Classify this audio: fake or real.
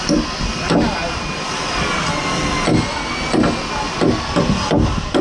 real